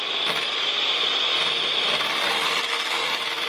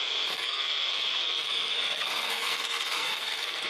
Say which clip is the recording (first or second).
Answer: first